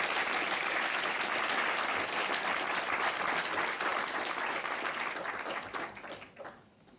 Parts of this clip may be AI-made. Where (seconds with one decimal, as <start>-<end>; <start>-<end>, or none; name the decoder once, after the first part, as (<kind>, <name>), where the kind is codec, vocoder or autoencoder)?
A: none